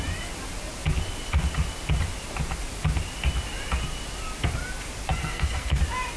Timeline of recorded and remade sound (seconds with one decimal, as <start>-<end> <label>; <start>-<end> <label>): 0.0-5.2 recorded; 5.2-5.8 remade; 5.8-6.2 recorded